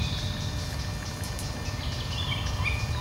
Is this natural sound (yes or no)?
yes